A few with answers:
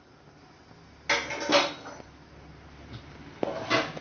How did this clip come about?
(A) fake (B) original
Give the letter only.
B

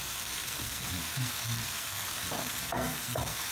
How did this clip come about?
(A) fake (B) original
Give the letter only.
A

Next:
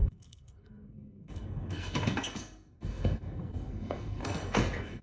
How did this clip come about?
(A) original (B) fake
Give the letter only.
B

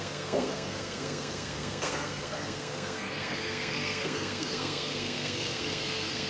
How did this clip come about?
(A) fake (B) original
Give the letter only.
A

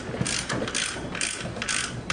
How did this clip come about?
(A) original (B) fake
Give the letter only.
A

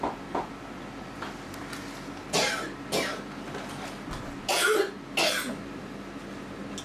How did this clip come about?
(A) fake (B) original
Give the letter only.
B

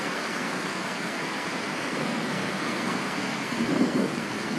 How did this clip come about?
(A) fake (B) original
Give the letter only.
A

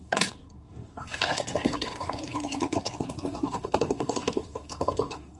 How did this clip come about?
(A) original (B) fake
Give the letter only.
B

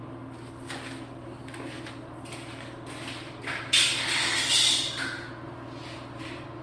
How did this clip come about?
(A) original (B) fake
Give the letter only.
A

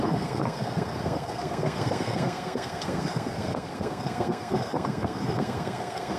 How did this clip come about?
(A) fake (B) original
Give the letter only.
A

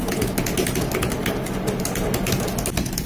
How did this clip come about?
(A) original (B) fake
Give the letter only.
A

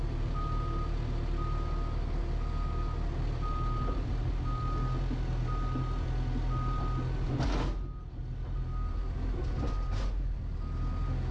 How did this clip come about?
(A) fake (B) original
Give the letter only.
B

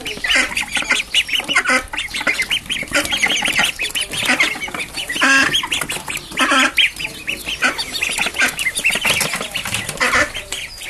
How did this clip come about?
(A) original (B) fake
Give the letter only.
A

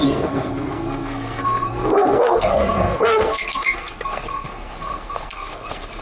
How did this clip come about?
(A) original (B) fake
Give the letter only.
B